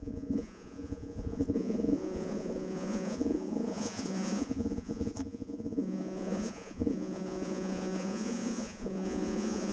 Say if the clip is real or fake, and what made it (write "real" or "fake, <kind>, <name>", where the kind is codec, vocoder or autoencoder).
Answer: fake, vocoder, Vocos